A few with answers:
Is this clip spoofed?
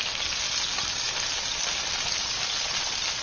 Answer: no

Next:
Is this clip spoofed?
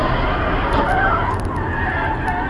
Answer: no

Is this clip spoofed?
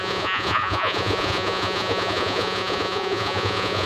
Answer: yes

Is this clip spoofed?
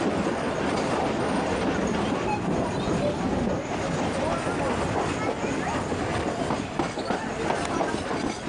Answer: no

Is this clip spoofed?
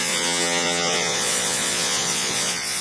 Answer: yes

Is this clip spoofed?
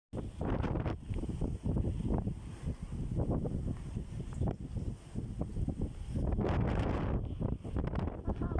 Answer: no